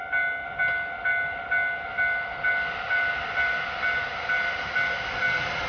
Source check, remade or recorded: recorded